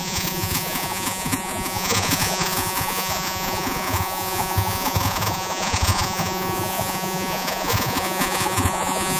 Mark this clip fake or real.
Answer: fake